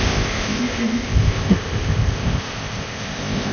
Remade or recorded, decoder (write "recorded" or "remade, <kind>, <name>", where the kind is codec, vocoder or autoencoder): remade, codec, ZipCodec